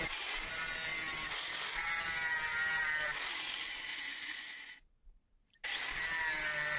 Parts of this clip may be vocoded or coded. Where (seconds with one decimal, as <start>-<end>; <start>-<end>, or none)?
3.9-4.8